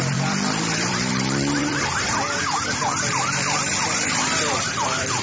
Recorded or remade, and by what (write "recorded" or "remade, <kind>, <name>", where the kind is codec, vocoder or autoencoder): remade, vocoder, BigVGAN v2